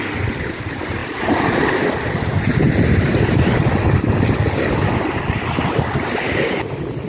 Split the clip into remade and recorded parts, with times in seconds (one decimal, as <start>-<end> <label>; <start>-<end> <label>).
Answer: 0.0-7.1 recorded